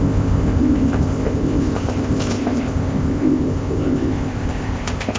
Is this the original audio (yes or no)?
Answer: no